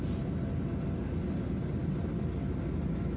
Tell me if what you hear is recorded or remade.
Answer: recorded